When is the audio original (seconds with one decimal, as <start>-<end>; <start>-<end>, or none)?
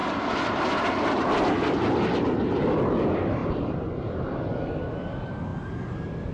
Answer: 0.0-6.3